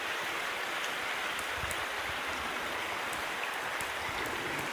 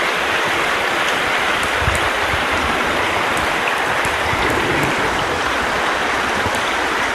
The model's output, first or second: second